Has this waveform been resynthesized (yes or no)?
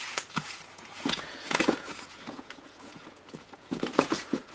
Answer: yes